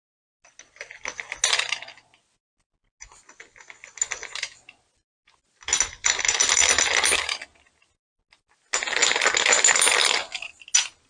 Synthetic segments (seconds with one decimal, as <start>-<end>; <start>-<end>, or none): none